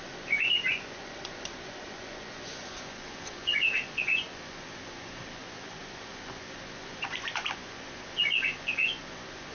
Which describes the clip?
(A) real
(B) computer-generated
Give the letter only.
B